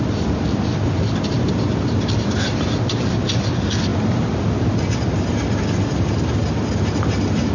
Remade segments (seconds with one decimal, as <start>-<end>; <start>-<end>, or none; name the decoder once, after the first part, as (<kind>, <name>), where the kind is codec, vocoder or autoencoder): none